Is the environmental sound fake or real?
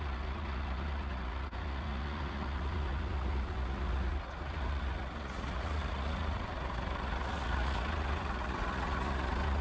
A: fake